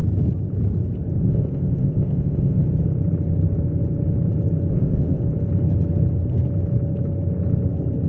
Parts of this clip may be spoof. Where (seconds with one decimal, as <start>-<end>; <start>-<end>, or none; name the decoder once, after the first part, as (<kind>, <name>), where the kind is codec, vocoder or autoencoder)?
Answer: 1.2-2.6 (codec, ZipCodec); 4.7-5.2